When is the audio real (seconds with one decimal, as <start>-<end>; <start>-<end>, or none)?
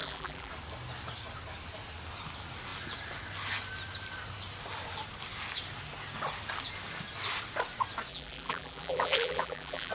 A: 0.5-8.1